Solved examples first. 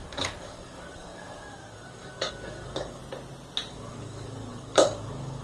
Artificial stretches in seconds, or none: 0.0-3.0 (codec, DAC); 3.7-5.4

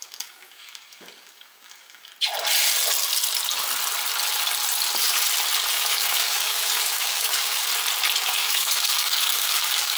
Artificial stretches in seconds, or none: 0.0-2.1 (codec, DAC); 5.7-7.7; 8.2-10.0

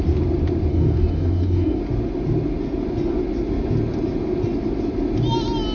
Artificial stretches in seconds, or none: 0.7-1.8 (codec, DAC)

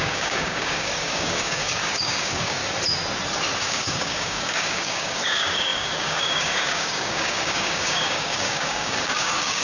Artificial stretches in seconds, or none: 0.0-2.6 (codec, DAC); 3.6-9.6

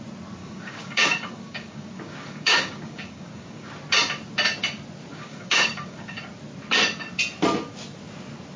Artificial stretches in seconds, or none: 0.4-3.7 (codec, DAC); 5.1-6.2

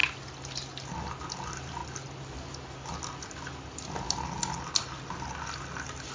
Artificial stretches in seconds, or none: none

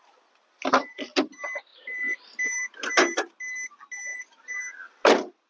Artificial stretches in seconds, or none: none

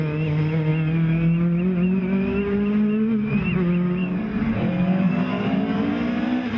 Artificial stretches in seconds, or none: 4.0-5.8 (codec, DAC)